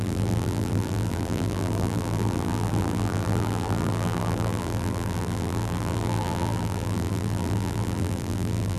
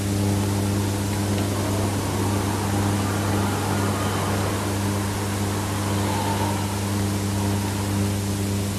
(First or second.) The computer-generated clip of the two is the first